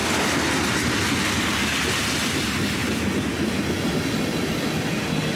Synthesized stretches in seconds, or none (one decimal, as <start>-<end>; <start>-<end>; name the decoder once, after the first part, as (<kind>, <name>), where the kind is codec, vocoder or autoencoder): none